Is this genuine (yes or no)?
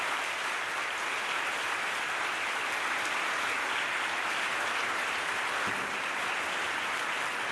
yes